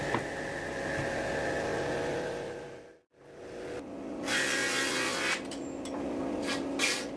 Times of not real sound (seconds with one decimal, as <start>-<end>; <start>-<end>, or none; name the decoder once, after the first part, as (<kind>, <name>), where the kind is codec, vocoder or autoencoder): none